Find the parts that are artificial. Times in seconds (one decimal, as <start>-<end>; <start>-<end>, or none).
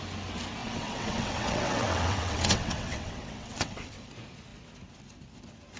0.6-4.1